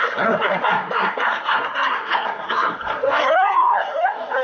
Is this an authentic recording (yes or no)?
no